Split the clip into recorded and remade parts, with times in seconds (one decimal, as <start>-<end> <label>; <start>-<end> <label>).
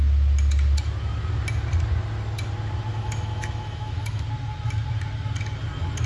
0.0-2.9 recorded; 2.9-4.2 remade; 4.2-6.1 recorded